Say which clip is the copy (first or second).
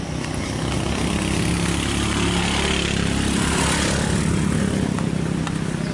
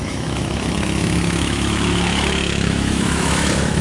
second